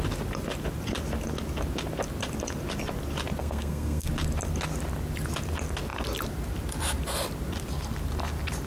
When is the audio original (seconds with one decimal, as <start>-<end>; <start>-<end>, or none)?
0.0-3.4; 4.1-8.7